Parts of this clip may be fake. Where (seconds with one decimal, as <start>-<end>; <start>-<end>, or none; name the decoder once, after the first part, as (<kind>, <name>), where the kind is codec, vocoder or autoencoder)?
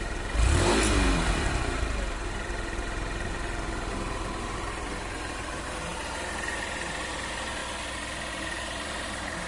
0.0-7.6 (vocoder, BigVGAN v2); 8.3-9.5